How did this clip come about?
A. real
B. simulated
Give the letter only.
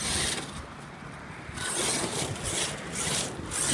A